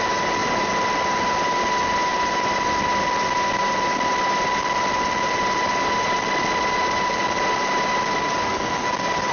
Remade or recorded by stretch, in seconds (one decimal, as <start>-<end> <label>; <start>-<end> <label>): 0.0-8.4 recorded; 8.4-8.9 remade; 8.9-9.3 recorded